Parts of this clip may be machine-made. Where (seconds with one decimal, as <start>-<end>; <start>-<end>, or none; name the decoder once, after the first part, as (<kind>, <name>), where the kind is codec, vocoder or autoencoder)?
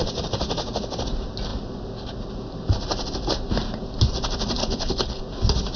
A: 4.6-5.2 (codec, HILCodec)